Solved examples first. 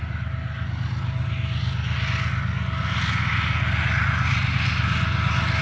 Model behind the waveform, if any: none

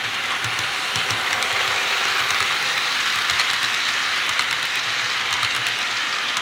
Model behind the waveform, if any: none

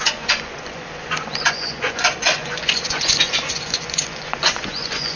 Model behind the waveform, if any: vocoder, Vocos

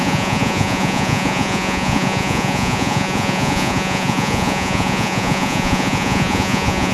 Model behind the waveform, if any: vocoder, Vocos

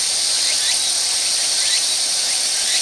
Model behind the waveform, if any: none